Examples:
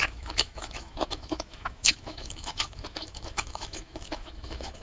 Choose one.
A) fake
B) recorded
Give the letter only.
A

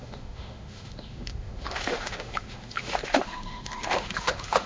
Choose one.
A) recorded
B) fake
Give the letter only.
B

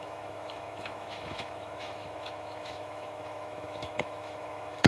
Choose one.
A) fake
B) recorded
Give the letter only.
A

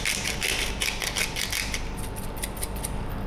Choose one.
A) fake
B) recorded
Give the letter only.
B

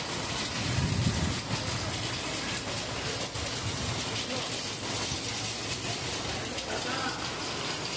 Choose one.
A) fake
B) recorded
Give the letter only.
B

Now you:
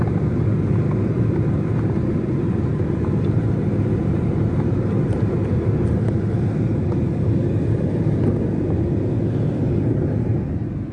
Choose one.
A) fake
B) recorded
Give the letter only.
B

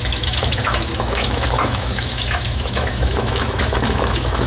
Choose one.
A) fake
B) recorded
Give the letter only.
A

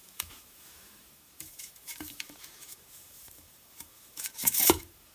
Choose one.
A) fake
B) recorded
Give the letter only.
A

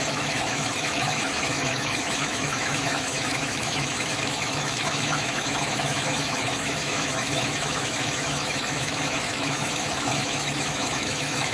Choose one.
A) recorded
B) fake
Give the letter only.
B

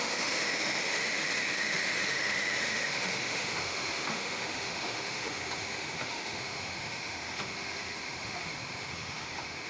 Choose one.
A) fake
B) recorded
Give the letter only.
A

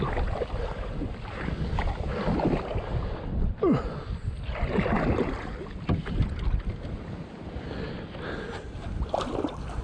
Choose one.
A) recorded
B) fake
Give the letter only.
A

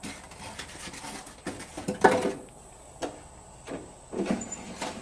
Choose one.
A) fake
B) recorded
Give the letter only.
B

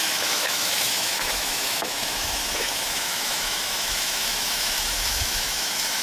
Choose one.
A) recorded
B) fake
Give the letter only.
B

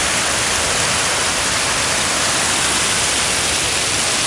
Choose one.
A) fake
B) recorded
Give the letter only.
B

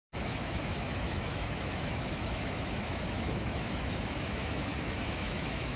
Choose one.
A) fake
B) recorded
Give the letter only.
A